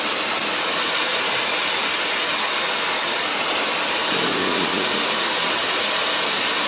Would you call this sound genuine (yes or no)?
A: yes